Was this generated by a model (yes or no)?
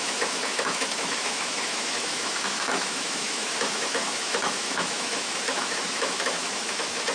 yes